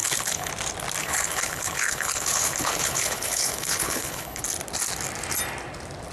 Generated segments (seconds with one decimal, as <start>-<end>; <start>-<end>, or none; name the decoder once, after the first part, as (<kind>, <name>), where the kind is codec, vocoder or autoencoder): 0.0-0.5 (codec, HILCodec); 1.0-4.4